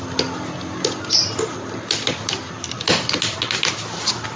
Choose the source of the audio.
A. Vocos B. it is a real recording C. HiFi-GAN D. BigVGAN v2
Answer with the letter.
B